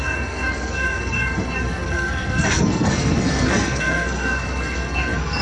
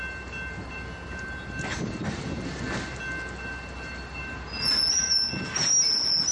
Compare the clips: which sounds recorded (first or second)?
second